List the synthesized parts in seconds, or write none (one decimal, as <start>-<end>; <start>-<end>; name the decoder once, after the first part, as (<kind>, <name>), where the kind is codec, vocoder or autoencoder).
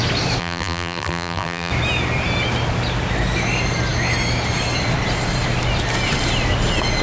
0.4-1.7 (vocoder, BigVGAN v2)